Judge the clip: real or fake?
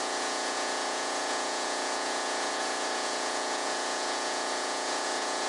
fake